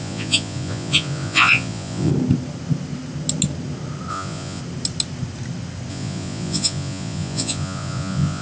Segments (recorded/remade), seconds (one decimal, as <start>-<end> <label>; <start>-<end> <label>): 0.0-2.1 remade; 2.1-4.1 recorded; 4.1-4.6 remade; 4.6-5.9 recorded; 5.9-8.4 remade